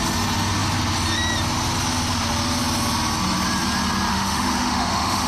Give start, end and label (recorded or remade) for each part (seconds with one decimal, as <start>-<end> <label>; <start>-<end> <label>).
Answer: 0.0-4.1 recorded; 4.1-5.3 remade